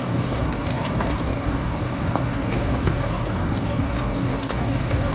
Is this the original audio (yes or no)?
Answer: no